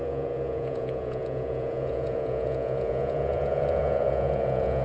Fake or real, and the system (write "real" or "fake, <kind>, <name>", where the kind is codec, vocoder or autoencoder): fake, vocoder, Vocos